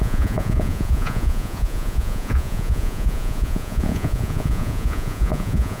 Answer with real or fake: fake